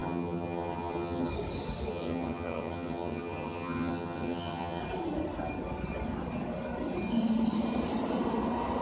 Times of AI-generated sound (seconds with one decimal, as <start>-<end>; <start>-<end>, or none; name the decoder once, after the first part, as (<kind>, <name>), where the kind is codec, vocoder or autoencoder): 0.0-1.3 (vocoder, HiFi-GAN); 1.9-4.8